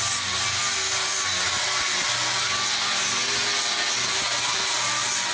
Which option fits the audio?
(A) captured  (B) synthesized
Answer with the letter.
A